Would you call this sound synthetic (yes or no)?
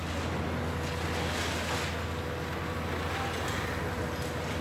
no